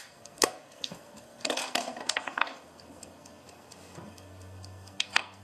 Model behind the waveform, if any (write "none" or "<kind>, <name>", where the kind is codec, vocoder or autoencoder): codec, SNAC